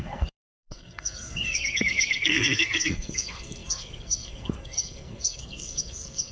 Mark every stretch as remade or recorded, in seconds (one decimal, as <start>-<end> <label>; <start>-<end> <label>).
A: 0.0-6.3 remade